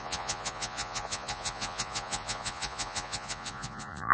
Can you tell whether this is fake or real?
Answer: fake